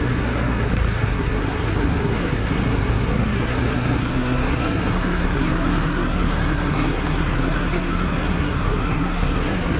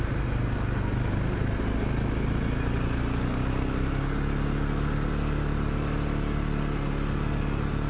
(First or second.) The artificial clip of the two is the first